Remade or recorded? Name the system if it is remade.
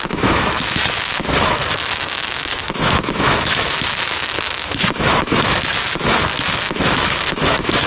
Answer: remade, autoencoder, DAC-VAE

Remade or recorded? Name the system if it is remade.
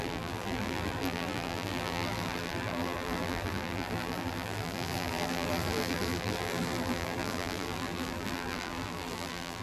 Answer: remade, vocoder, BigVGAN v2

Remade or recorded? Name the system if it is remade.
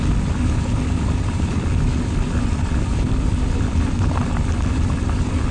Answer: recorded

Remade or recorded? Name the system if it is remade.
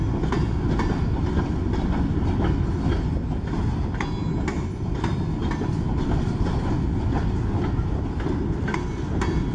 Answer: recorded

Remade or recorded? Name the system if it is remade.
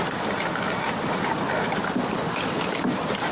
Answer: recorded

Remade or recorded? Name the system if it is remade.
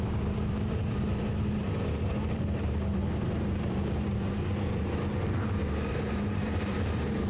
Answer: remade, vocoder, BigVGAN v2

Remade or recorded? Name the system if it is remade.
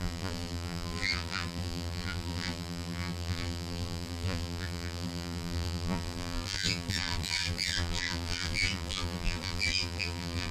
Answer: remade, vocoder, BigVGAN v2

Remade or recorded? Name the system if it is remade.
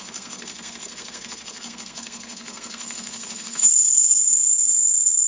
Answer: remade, codec, SNAC